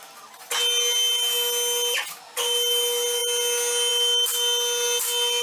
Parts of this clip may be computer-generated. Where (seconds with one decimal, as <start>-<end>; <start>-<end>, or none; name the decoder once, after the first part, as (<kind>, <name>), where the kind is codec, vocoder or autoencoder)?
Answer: none